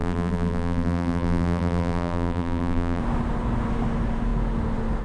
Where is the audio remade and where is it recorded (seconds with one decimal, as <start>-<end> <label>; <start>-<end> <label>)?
0.0-3.0 remade; 3.0-5.0 recorded